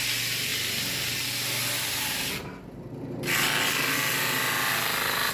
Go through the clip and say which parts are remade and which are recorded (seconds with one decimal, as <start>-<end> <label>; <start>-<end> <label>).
0.0-5.3 recorded